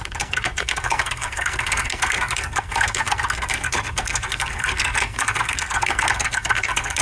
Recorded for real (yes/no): no